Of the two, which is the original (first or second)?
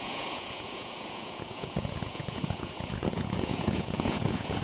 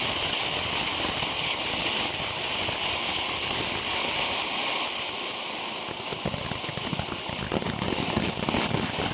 second